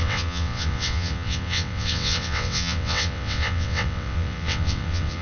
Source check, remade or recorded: remade